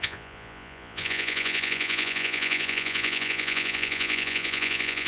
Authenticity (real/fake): fake